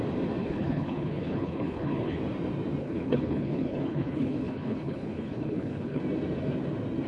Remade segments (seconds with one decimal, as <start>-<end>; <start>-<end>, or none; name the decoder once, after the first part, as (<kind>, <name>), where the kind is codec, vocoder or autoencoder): 0.4-2.2 (codec, HILCodec); 2.8-6.0